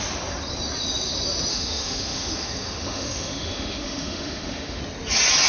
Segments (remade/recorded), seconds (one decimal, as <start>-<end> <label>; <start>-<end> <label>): 0.0-1.5 recorded; 1.5-4.8 remade; 4.8-5.5 recorded